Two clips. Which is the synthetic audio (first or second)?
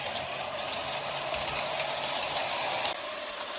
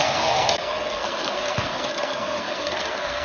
second